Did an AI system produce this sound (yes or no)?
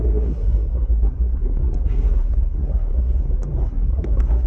yes